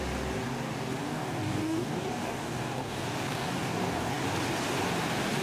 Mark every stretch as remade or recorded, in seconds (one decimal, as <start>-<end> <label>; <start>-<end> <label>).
0.0-1.0 recorded; 1.0-4.2 remade; 4.2-5.4 recorded